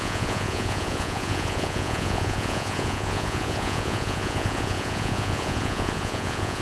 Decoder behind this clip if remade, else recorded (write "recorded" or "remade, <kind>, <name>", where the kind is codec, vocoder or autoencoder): remade, vocoder, Vocos